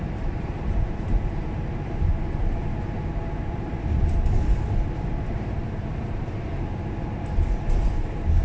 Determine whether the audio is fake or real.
fake